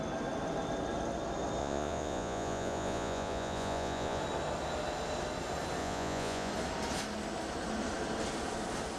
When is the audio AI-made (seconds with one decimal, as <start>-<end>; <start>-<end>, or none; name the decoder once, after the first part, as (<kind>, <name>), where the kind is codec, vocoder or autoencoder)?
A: 1.6-4.2 (vocoder, Vocos); 5.8-6.5